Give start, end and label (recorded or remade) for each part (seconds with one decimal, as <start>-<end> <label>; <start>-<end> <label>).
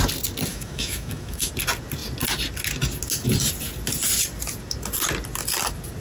0.0-0.5 recorded; 0.5-1.5 remade; 1.5-6.0 recorded